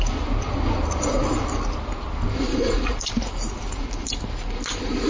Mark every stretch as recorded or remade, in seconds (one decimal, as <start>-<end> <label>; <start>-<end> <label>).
0.0-2.5 recorded; 2.5-3.1 remade; 3.1-5.1 recorded